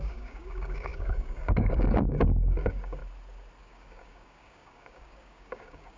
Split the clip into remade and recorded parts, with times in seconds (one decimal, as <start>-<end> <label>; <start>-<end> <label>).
0.0-3.0 remade; 3.0-3.6 recorded; 3.6-6.0 remade